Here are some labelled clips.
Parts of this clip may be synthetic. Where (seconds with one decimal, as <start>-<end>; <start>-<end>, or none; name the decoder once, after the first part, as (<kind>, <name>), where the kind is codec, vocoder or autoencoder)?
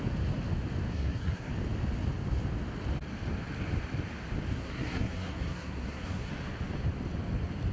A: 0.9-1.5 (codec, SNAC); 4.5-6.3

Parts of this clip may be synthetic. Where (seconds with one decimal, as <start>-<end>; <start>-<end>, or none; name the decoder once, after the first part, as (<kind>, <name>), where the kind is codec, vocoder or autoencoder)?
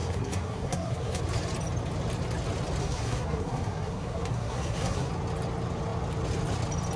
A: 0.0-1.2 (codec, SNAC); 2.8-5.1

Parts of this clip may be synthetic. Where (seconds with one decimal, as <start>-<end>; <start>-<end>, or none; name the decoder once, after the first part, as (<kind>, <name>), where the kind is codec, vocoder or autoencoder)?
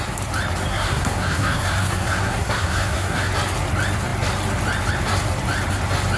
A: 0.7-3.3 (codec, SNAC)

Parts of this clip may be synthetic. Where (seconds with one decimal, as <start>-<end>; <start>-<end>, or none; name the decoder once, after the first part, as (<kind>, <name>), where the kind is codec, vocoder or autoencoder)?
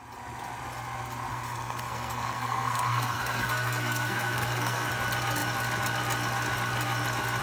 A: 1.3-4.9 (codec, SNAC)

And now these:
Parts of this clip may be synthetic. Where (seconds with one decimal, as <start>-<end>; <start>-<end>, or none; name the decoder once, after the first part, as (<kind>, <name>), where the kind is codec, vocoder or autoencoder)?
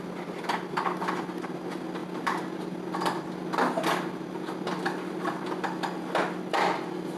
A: none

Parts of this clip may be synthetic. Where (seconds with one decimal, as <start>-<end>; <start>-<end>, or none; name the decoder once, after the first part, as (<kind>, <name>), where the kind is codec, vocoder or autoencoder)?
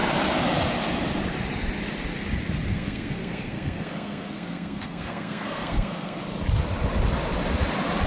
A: 2.7-6.2 (codec, SNAC)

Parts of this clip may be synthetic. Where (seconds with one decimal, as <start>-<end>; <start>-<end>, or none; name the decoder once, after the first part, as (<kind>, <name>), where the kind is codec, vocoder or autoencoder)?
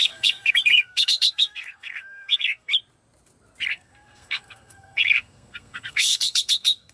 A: 0.0-2.7 (codec, SNAC); 3.7-6.9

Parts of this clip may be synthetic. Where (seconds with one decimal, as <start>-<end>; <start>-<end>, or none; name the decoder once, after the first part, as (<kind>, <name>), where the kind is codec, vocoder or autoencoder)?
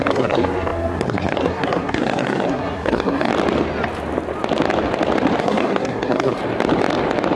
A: 0.0-3.3 (codec, SNAC); 5.4-6.4